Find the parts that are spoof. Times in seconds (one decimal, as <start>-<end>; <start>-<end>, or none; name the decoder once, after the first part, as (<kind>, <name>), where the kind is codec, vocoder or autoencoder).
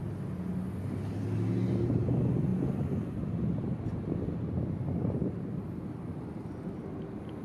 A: none